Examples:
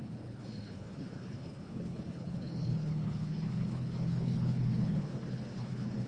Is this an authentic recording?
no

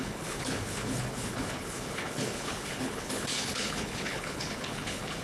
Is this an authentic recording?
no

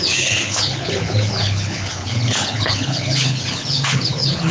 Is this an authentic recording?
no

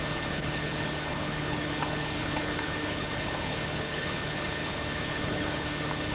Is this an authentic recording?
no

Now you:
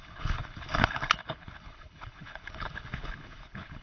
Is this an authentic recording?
no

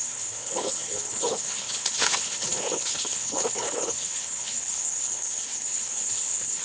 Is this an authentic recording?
no